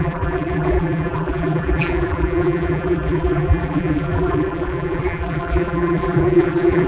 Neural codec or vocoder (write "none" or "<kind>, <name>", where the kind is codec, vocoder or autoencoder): vocoder, BigVGAN v2